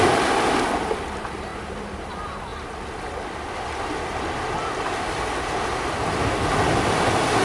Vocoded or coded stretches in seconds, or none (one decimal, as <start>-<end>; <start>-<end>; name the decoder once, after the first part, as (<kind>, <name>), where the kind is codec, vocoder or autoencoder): none

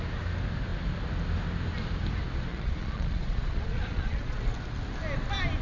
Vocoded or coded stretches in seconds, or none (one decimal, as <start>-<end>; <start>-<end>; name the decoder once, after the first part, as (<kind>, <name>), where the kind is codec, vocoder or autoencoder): 2.5-4.4 (vocoder, Vocos)

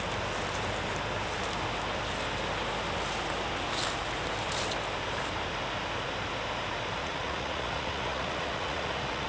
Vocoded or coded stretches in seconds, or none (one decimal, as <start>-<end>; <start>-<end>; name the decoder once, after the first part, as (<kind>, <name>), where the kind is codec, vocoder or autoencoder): 7.0-9.3 (vocoder, Vocos)